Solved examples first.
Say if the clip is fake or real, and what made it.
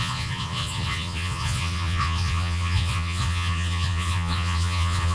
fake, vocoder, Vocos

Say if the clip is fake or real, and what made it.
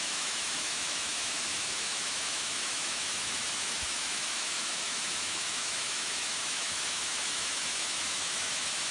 fake, autoencoder, DAC-VAE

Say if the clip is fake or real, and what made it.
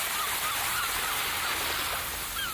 real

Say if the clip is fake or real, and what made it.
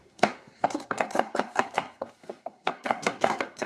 fake, codec, SNAC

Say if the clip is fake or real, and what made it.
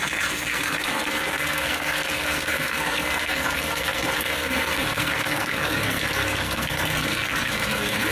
fake, codec, SNAC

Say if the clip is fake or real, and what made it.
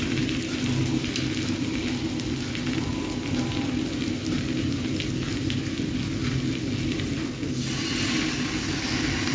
real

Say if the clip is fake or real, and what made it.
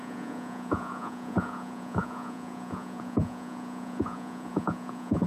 fake, vocoder, Vocos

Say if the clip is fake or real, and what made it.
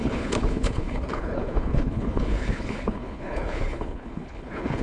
fake, codec, HILCodec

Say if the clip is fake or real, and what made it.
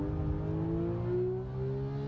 real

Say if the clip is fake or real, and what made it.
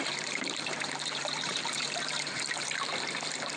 fake, vocoder, BigVGAN v2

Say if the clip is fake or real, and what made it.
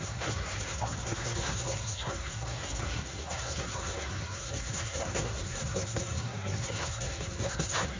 fake, codec, SNAC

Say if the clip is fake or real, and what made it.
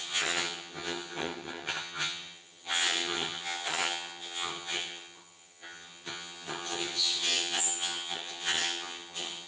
fake, vocoder, HiFi-GAN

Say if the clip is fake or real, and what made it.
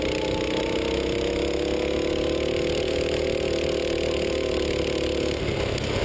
real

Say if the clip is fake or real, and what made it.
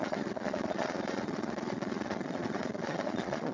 fake, vocoder, Vocos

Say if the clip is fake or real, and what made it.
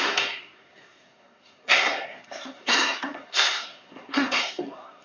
fake, codec, SNAC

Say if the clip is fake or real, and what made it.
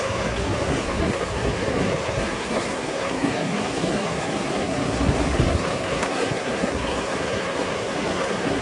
fake, codec, SNAC